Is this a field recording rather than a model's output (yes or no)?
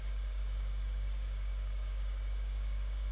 no